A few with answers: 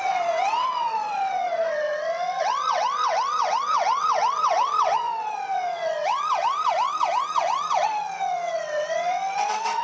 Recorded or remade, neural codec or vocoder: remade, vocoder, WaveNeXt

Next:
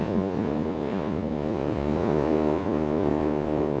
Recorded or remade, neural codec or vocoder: remade, vocoder, Vocos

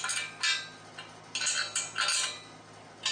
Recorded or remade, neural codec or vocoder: recorded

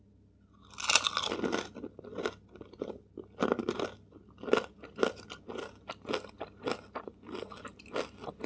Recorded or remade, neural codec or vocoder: recorded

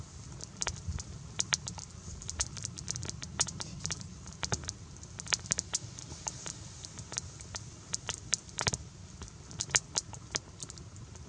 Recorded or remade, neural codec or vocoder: recorded